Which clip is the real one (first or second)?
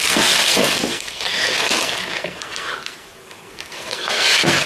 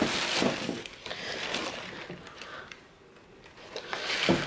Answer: second